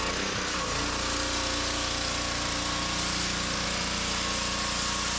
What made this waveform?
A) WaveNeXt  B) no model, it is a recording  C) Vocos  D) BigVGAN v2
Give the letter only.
B